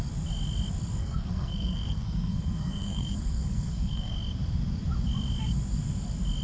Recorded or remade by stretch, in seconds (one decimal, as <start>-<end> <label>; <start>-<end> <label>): 0.0-1.0 recorded; 1.0-4.1 remade; 4.1-6.4 recorded

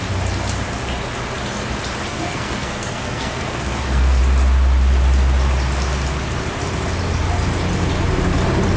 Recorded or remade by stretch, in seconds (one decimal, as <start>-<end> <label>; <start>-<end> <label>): 0.0-2.0 recorded; 2.0-4.2 remade; 4.2-8.8 recorded

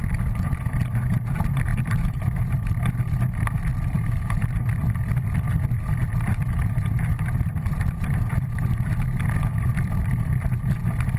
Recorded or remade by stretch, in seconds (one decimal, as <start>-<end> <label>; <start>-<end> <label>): 0.0-3.7 recorded; 3.7-4.8 remade; 4.8-11.2 recorded

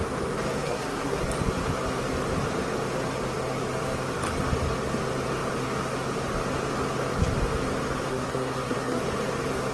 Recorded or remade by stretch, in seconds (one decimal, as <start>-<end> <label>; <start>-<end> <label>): 0.0-0.6 recorded; 0.6-1.2 remade; 1.2-8.1 recorded; 8.1-9.0 remade; 9.0-9.7 recorded

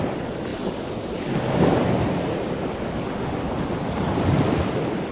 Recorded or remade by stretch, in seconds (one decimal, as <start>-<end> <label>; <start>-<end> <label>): 0.0-5.1 recorded